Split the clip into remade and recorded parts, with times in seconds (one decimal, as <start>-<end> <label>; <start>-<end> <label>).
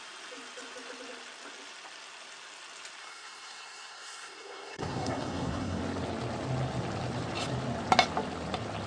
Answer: 0.0-3.0 recorded; 3.0-5.8 remade; 5.8-8.9 recorded